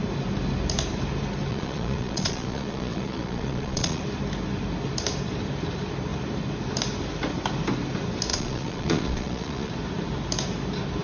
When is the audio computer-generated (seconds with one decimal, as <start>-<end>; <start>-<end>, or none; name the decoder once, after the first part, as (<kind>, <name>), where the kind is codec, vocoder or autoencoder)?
1.5-4.0 (vocoder, Vocos); 8.3-9.7